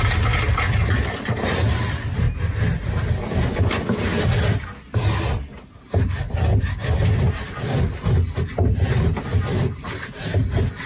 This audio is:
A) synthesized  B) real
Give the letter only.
B